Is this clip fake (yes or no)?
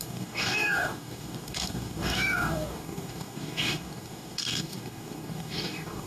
yes